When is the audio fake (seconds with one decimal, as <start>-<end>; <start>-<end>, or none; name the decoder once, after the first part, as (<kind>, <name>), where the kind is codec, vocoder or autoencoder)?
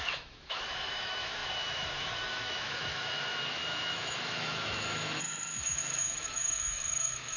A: 0.0-7.4 (autoencoder, DAC-VAE)